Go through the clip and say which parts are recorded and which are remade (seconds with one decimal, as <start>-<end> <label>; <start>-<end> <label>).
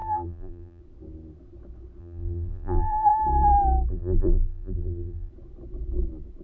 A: 0.0-0.8 remade; 0.8-2.0 recorded; 2.0-3.1 remade; 3.1-3.9 recorded; 3.9-5.3 remade; 5.3-6.4 recorded